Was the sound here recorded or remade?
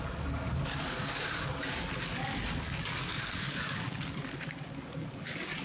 remade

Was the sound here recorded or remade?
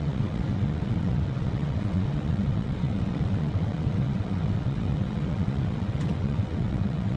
remade